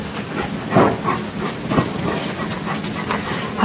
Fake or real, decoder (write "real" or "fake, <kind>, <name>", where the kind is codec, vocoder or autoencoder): real